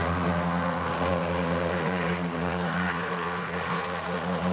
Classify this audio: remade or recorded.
remade